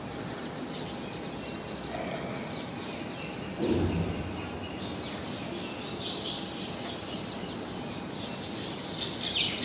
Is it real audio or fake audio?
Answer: real